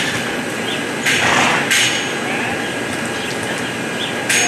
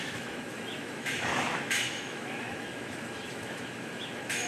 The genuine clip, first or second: first